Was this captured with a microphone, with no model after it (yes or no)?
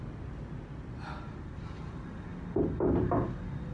yes